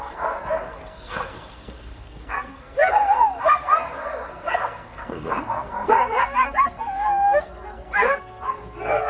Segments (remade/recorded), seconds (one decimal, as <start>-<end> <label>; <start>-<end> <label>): 0.0-9.1 remade